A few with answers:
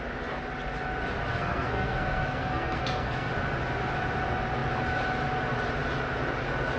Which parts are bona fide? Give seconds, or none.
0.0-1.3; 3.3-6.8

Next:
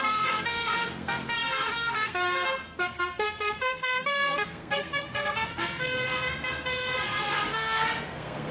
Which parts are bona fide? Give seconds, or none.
none